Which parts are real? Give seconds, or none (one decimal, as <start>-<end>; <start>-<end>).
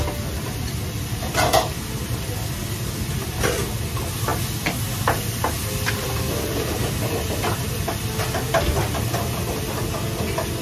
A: 0.0-10.6